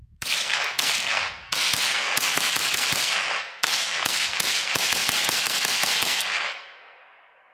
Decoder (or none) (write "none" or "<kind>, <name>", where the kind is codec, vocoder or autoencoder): codec, SNAC